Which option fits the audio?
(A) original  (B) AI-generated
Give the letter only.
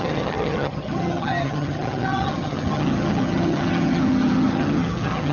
B